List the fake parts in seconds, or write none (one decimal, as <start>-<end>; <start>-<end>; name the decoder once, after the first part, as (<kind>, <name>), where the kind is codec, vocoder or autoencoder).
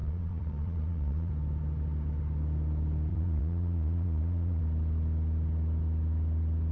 0.0-1.3 (vocoder, Vocos); 3.1-4.6